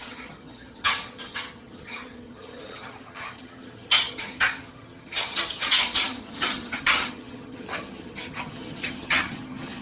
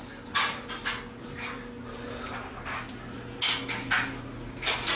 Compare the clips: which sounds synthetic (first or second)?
first